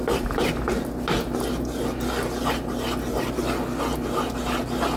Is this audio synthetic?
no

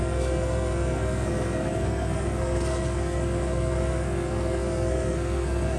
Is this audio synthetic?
yes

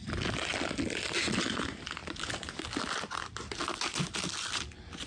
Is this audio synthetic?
no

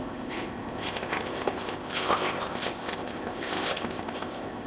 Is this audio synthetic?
yes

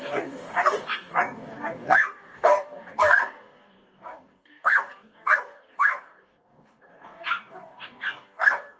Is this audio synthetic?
yes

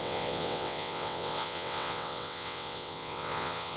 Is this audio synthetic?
yes